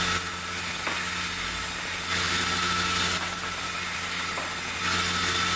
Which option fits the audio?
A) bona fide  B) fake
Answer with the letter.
A